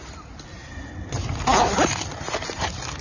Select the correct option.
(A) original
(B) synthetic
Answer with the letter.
A